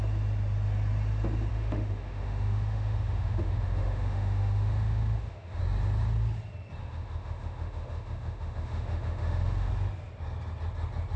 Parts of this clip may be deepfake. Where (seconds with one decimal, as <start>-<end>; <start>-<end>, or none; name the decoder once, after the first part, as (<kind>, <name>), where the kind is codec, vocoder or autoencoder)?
1.5-5.6 (autoencoder, DAC-VAE); 6.8-9.7

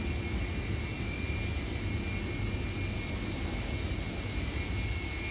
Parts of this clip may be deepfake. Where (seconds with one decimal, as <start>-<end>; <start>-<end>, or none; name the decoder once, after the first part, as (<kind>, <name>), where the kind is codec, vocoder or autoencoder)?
none

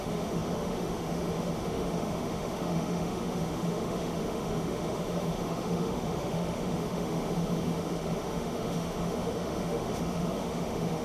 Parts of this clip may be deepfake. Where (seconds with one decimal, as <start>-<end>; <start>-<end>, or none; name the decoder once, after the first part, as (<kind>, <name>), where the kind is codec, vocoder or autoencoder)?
0.0-11.0 (autoencoder, DAC-VAE)

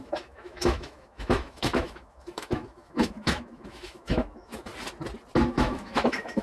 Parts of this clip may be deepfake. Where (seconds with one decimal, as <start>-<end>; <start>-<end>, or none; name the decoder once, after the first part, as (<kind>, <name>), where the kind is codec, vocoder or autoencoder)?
0.0-4.7 (autoencoder, DAC-VAE); 5.5-6.4

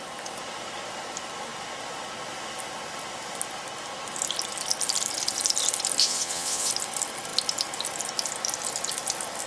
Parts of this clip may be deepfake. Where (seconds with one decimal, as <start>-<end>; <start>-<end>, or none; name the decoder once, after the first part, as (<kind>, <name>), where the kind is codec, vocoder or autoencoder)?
6.0-6.7 (vocoder, Vocos)

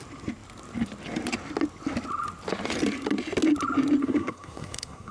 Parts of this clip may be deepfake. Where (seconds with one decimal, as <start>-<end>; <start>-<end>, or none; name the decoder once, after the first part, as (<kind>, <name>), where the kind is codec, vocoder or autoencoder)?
4.0-5.1 (codec, SNAC)

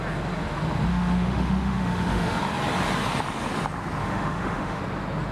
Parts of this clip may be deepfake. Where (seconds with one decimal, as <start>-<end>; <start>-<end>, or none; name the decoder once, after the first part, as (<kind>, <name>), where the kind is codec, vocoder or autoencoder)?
0.9-2.4 (autoencoder, DAC-VAE); 4.0-4.8